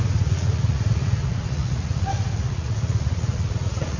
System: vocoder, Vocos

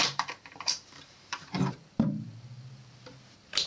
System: vocoder, BigVGAN v2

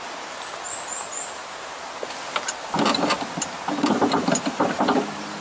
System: none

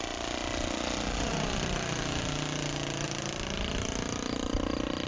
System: none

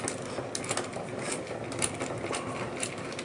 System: none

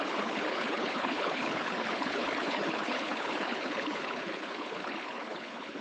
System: codec, HILCodec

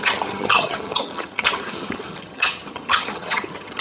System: vocoder, HiFi-GAN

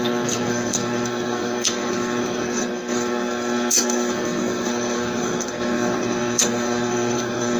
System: codec, SNAC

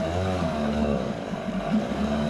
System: codec, DAC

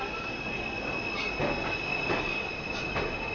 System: none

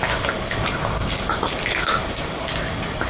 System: none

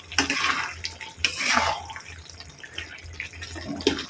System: none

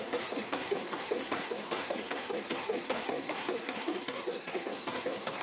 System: codec, SNAC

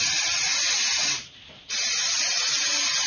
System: vocoder, BigVGAN v2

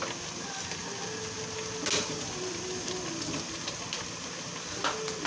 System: none